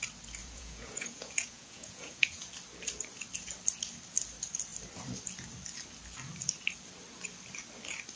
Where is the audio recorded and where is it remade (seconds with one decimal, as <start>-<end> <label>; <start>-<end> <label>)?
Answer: 0.0-0.4 recorded; 0.4-2.5 remade; 2.5-8.2 recorded